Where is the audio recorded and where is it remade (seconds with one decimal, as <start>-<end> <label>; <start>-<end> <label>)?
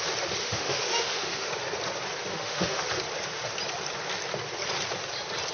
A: 0.0-0.4 recorded; 0.4-1.5 remade; 1.5-2.3 recorded; 2.3-2.9 remade; 2.9-5.5 recorded